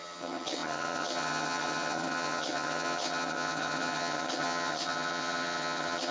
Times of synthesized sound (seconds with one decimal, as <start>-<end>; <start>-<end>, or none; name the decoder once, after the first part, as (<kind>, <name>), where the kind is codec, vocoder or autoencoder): 0.0-6.1 (vocoder, HiFi-GAN)